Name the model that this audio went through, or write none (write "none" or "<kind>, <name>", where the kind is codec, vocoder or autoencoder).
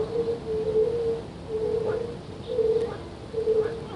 none